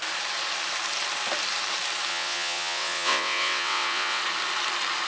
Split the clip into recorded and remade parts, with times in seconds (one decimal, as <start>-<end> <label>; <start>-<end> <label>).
0.0-2.1 recorded; 2.1-4.2 remade; 4.2-5.1 recorded